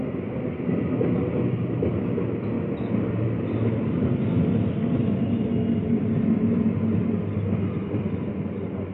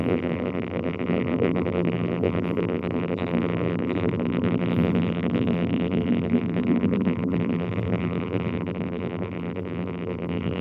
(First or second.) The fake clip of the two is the second